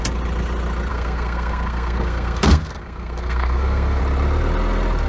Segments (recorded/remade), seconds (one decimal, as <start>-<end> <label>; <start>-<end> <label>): 0.0-0.9 recorded; 0.9-4.0 remade; 4.0-5.1 recorded